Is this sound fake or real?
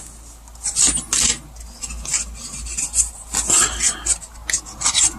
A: real